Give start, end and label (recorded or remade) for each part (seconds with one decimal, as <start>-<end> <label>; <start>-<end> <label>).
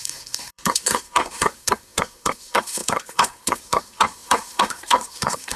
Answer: 0.0-5.6 remade